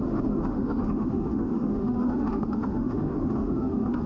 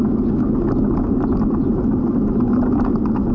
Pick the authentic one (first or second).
second